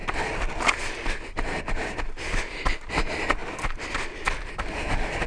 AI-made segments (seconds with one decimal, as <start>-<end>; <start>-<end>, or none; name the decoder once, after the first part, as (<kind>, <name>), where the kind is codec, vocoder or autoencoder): none

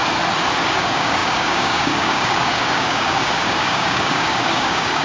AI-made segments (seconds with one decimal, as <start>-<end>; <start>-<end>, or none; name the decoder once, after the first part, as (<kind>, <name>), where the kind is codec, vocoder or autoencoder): 0.6-5.0 (codec, DAC)

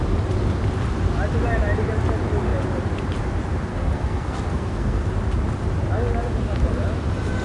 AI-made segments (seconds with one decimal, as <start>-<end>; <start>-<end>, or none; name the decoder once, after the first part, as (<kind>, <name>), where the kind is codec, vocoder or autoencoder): 3.7-5.1 (codec, SNAC)

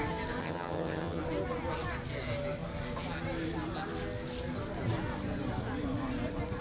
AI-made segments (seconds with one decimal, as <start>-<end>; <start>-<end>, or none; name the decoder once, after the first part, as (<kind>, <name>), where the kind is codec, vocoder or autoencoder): 0.4-1.2 (vocoder, HiFi-GAN)

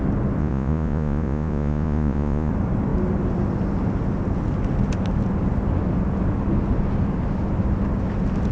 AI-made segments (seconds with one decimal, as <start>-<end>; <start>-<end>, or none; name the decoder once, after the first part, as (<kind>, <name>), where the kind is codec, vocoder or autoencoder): 0.4-2.5 (vocoder, Vocos)

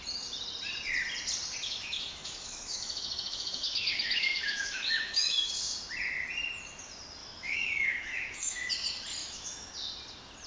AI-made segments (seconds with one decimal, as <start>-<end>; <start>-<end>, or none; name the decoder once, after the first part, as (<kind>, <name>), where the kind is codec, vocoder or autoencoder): 1.6-5.5 (autoencoder, DAC-VAE); 7.2-8.7; 9.2-9.7

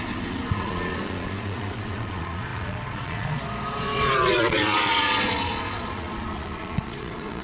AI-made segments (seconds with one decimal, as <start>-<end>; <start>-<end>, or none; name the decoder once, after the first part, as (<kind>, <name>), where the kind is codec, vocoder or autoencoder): 0.0-7.4 (vocoder, Vocos)

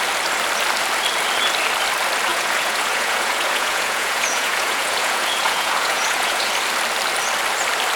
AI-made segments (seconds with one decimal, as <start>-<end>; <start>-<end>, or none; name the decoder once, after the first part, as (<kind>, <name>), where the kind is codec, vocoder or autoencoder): 2.3-6.5 (vocoder, Vocos)